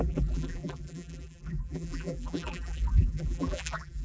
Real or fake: fake